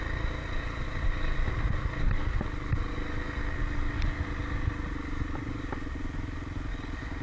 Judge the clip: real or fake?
real